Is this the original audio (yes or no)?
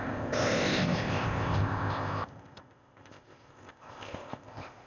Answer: no